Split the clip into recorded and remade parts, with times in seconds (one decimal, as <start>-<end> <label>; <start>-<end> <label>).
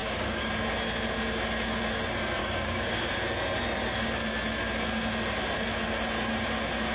0.0-0.5 remade; 0.5-2.4 recorded; 2.4-3.1 remade; 3.1-6.9 recorded